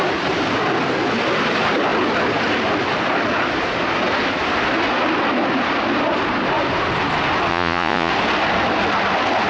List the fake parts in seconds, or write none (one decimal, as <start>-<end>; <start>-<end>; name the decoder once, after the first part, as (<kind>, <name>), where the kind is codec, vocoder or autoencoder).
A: 7.5-8.1 (vocoder, Vocos)